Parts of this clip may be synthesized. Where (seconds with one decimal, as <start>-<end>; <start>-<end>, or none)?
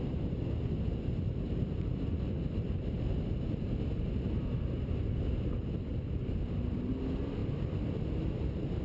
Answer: 5.9-6.9